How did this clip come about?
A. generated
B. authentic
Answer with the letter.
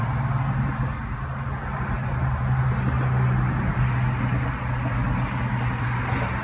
B